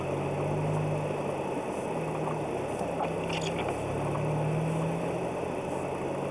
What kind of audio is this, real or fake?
real